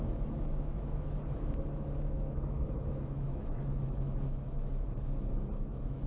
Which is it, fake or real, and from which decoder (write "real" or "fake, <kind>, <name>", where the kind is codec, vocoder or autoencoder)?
fake, autoencoder, DAC-VAE